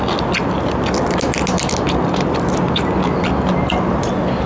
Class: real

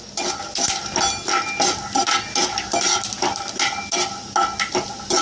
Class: real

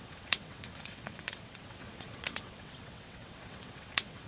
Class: fake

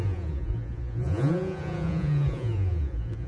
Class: fake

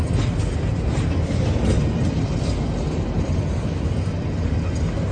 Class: real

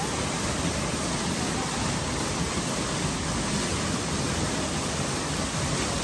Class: real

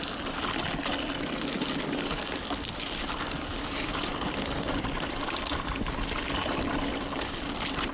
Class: real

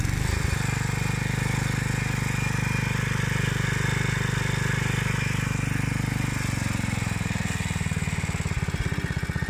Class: real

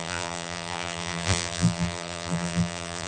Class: fake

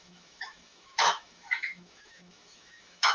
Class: fake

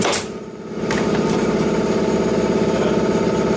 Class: fake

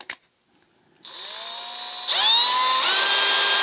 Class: real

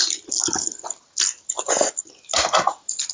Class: real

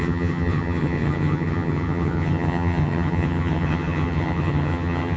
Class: fake